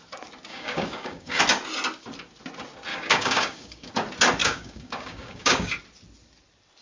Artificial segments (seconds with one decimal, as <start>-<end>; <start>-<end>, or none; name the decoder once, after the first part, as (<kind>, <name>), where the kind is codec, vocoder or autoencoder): 0.5-1.4 (codec, DAC); 2.9-3.9; 4.4-5.7